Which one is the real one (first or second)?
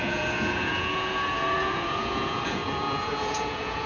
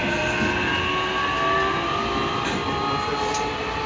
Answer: second